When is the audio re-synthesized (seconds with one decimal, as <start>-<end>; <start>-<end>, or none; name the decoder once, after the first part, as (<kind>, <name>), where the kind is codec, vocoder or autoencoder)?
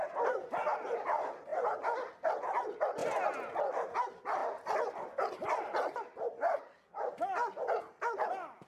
1.5-2.1 (vocoder, BigVGAN v2)